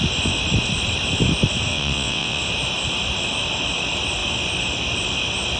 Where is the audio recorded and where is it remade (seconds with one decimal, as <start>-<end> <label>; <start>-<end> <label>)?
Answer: 0.0-1.7 recorded; 1.7-2.4 remade; 2.4-5.6 recorded